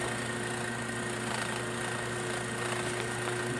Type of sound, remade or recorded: recorded